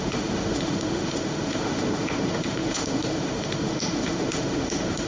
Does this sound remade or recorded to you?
remade